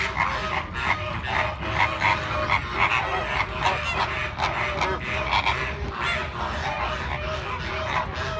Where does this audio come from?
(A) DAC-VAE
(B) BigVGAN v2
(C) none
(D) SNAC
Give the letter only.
C